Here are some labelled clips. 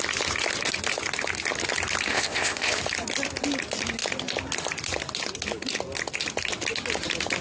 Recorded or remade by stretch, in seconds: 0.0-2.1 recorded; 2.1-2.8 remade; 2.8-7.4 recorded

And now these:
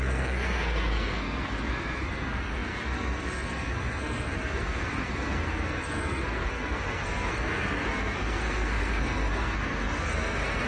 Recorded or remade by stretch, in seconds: 0.0-10.7 remade

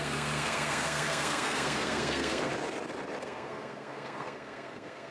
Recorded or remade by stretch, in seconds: 0.0-2.5 remade; 2.5-3.2 recorded; 3.2-5.1 remade

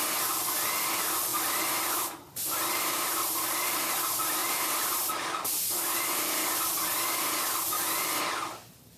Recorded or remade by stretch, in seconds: 0.0-1.3 recorded; 1.3-3.8 remade; 3.8-4.4 recorded; 4.4-5.7 remade; 5.7-9.0 recorded

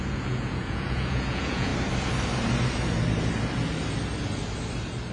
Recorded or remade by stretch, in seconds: 0.0-1.7 remade; 1.7-5.1 recorded